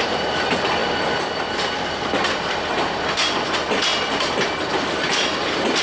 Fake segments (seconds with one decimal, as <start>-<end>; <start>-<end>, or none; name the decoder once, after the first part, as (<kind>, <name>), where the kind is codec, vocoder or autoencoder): none